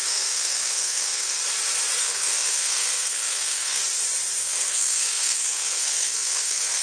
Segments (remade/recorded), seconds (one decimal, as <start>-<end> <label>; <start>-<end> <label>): 0.0-1.4 remade; 1.4-2.0 recorded; 2.0-3.8 remade; 3.8-4.4 recorded; 4.4-6.8 remade